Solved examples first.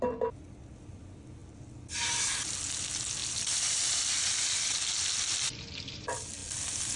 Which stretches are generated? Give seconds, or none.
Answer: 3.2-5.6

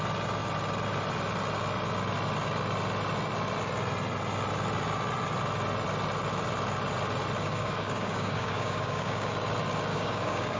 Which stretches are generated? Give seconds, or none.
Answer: 7.4-9.3; 9.9-10.6

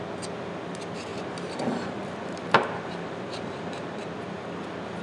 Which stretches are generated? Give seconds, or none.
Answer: 1.1-4.1

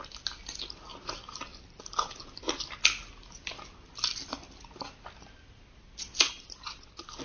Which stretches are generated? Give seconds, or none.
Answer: none

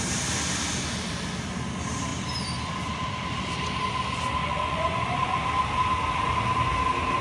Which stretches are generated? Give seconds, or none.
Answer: 4.4-5.4

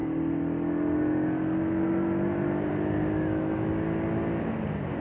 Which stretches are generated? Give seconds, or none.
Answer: none

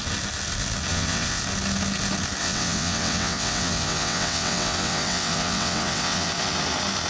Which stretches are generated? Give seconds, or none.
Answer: 0.9-1.4; 2.4-6.3